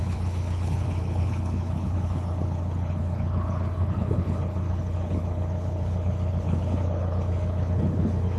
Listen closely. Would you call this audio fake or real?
fake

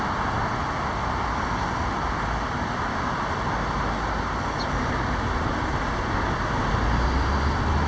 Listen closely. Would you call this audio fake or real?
real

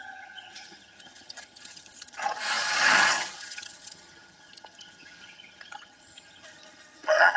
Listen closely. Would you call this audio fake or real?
fake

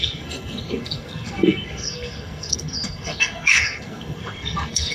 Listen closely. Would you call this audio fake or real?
fake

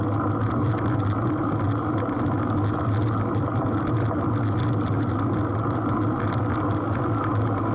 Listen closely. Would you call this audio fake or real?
real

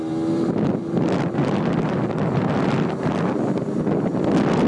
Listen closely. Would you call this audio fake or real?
real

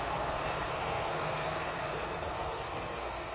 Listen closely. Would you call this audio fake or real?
fake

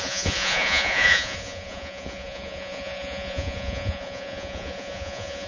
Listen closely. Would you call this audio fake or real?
fake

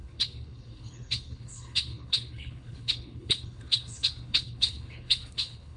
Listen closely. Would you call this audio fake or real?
fake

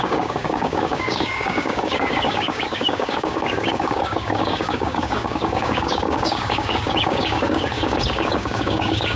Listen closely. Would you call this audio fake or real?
fake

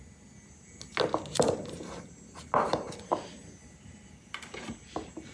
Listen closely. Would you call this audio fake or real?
real